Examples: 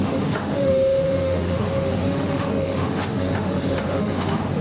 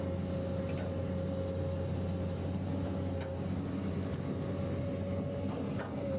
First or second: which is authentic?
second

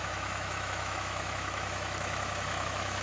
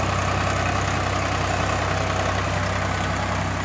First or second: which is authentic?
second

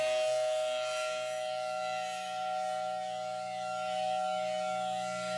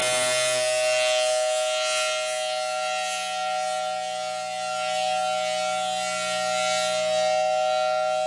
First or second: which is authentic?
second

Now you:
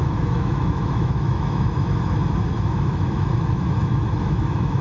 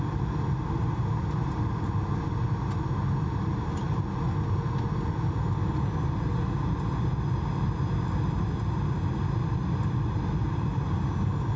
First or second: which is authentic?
second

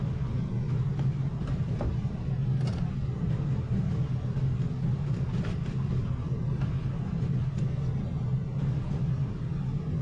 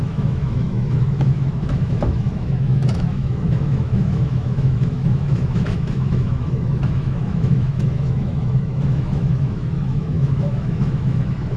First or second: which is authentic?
first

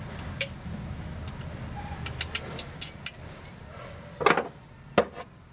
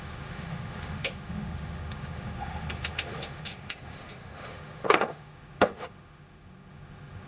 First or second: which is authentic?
first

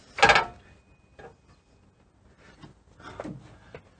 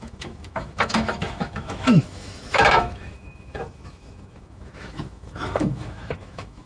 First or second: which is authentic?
first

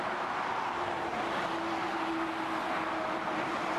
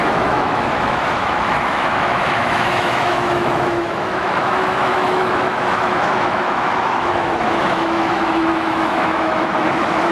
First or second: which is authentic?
first